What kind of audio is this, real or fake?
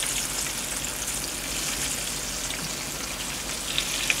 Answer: real